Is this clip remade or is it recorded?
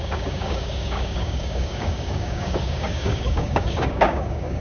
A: remade